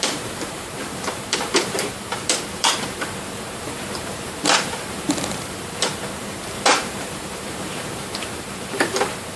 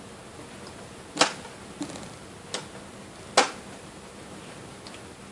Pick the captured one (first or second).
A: second